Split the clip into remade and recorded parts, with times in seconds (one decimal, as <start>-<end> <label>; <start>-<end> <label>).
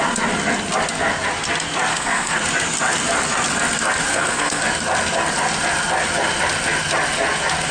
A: 0.0-1.9 recorded; 1.9-2.4 remade; 2.4-4.1 recorded; 4.1-4.6 remade; 4.6-7.7 recorded